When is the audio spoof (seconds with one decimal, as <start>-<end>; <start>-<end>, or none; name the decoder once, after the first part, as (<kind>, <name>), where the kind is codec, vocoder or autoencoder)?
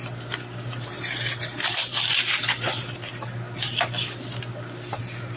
none